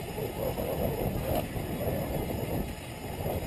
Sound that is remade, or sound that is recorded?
recorded